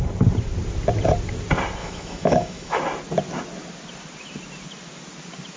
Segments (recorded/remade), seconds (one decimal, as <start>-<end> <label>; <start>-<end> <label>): 0.0-1.8 recorded; 1.8-2.8 remade; 2.8-5.6 recorded